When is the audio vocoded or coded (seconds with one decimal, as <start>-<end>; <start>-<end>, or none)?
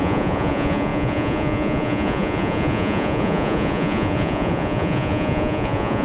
0.0-6.0